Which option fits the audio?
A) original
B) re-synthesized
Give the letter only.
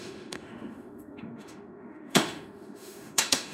B